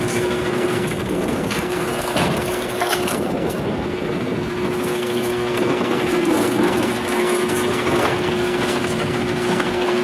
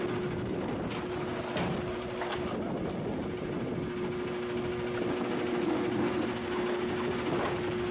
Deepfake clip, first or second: first